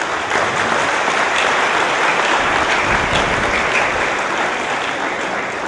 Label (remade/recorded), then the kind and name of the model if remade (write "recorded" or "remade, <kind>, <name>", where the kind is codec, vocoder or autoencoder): recorded